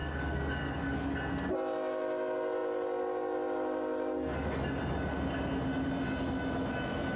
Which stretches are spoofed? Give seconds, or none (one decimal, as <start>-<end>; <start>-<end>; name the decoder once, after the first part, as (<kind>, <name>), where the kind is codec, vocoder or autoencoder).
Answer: 0.0-1.0 (codec, DAC)